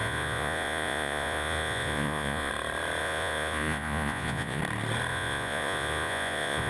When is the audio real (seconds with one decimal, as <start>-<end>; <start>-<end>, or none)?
2.5-3.0; 4.6-5.1